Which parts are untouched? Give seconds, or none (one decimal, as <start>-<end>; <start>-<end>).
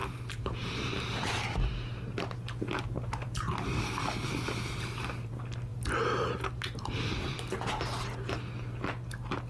5.3-9.5